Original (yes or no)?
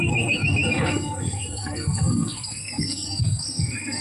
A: no